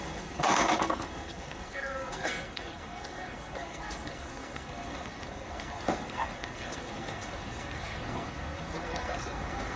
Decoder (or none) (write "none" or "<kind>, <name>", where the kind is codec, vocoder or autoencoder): codec, SNAC